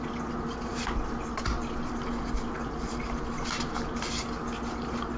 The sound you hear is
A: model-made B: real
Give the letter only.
B